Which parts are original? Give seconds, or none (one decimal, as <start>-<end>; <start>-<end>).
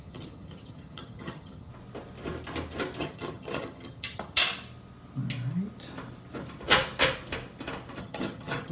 1.7-3.0; 4.4-8.0